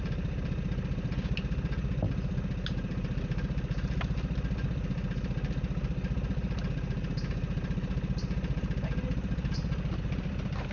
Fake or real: real